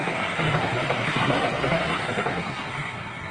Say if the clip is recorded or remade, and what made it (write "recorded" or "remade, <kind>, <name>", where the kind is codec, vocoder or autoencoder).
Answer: remade, codec, SNAC